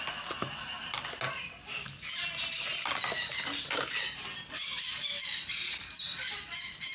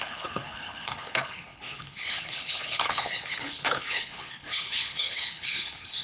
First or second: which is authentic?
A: first